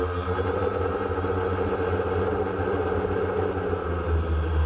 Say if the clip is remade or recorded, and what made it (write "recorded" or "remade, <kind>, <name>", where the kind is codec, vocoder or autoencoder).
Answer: recorded